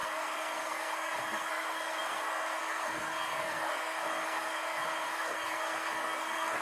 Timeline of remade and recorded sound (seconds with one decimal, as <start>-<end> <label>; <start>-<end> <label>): 0.0-6.6 remade